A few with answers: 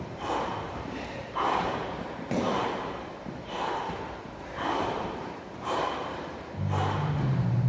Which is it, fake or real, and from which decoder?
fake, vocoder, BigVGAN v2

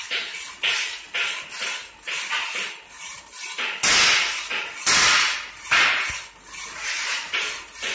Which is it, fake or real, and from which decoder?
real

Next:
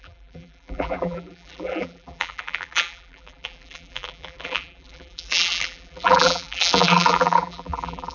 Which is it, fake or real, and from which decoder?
fake, vocoder, BigVGAN v2